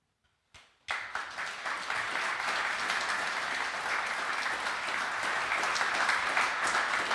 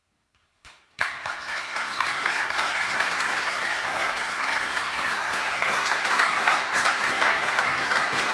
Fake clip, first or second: second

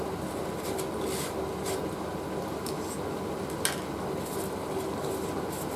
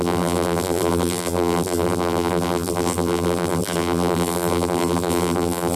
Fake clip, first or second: second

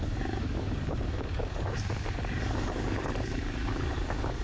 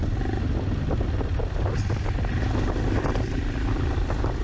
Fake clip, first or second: first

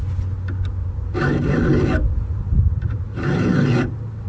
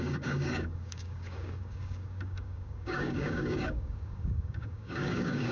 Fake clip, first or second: second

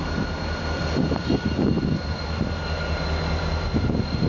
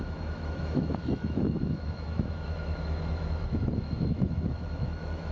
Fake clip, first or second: second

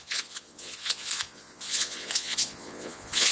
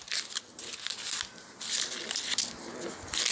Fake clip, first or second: first